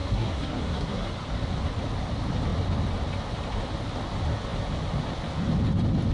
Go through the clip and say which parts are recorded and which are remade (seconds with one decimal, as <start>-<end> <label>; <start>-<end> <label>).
0.0-1.1 remade; 1.1-6.1 recorded